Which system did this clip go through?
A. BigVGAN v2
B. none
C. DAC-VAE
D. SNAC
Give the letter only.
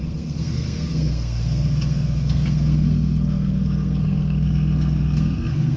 D